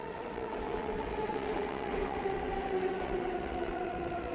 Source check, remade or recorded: remade